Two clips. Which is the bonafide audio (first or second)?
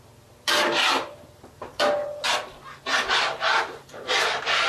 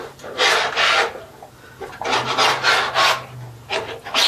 second